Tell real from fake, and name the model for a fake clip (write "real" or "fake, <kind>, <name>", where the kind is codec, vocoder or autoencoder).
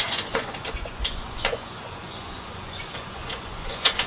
fake, vocoder, Vocos